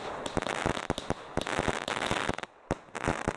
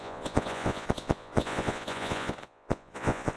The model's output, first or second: second